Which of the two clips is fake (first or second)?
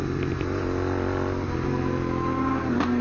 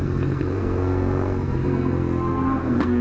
second